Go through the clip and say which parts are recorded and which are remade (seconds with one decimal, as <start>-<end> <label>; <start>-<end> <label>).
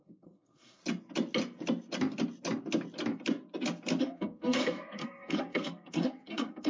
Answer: 0.0-0.8 remade; 0.8-4.0 recorded; 4.0-6.7 remade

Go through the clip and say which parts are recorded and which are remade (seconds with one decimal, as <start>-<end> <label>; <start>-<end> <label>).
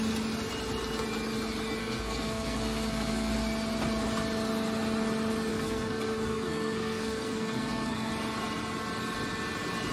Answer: 0.0-1.8 recorded; 1.8-3.3 remade; 3.3-5.5 recorded; 5.5-8.1 remade; 8.1-9.9 recorded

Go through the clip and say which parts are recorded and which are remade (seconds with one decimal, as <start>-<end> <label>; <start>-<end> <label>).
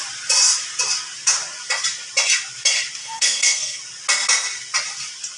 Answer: 0.0-3.0 recorded; 3.0-3.8 remade; 3.8-5.4 recorded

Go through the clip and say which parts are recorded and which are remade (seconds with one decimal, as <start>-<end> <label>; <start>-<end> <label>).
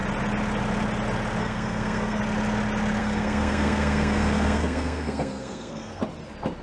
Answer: 0.0-1.4 recorded; 1.4-2.2 remade; 2.2-3.0 recorded; 3.0-6.0 remade; 6.0-6.6 recorded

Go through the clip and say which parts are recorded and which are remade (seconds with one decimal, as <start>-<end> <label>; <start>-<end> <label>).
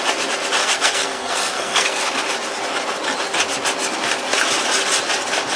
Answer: 0.0-0.6 recorded; 0.6-2.0 remade; 2.0-5.6 recorded